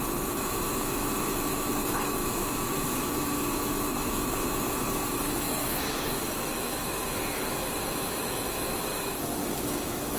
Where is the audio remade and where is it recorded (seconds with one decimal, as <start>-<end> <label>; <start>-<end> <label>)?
0.0-10.2 remade